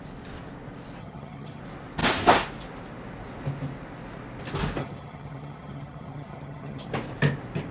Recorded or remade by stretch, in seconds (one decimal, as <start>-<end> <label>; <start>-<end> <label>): 0.0-1.0 recorded; 1.0-1.6 remade; 1.6-4.8 recorded; 4.8-6.9 remade; 6.9-7.7 recorded